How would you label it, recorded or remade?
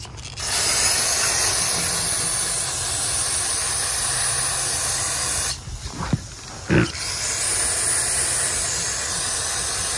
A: recorded